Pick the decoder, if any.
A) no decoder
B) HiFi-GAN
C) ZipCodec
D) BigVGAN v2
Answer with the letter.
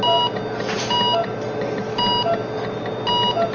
A